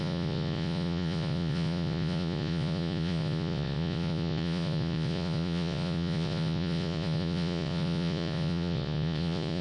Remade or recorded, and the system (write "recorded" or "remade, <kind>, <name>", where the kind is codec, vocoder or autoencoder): remade, vocoder, Vocos